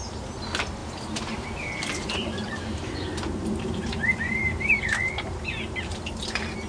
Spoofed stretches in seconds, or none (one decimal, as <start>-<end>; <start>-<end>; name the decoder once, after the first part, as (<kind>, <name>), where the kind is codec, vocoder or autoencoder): 0.8-4.8 (vocoder, BigVGAN v2)